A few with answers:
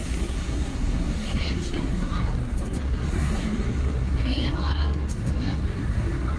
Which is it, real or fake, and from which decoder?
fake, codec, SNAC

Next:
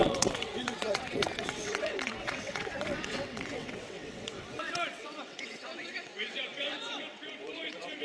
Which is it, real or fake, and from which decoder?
fake, vocoder, WaveNeXt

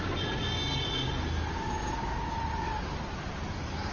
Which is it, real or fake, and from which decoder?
real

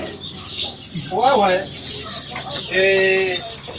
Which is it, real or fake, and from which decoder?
real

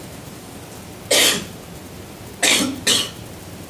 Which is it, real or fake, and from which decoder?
real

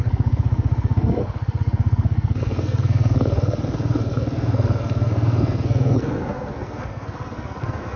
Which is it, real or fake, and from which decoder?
fake, codec, SNAC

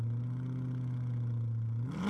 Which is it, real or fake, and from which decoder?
real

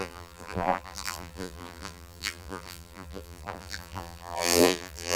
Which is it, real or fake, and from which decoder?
fake, vocoder, BigVGAN v2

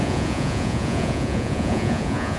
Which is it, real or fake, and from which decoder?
fake, vocoder, Vocos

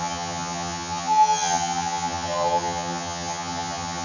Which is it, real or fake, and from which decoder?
fake, vocoder, HiFi-GAN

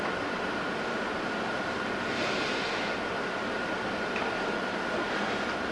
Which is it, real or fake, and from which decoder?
real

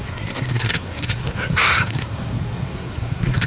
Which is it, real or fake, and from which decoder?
fake, codec, SNAC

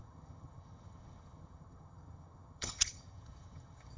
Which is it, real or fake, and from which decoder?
fake, vocoder, HiFi-GAN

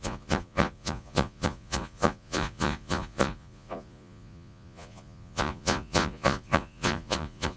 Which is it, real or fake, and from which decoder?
fake, vocoder, Vocos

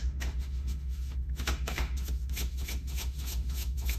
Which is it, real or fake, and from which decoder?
fake, autoencoder, DAC-VAE